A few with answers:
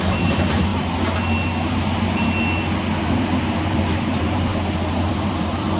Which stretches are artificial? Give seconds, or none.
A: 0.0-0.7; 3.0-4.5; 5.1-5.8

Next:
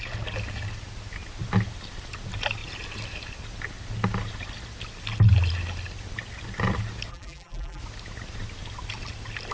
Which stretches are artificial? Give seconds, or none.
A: 7.1-7.8

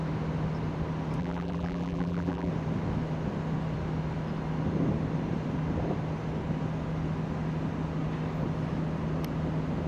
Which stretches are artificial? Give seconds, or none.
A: 1.2-2.5

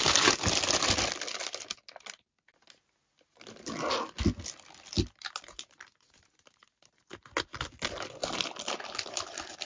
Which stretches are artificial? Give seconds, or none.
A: none